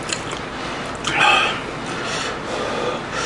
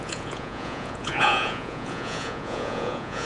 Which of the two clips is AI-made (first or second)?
second